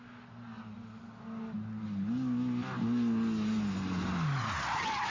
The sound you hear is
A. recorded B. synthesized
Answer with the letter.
A